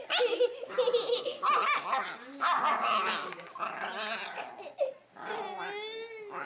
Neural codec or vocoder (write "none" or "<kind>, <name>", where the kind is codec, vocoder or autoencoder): none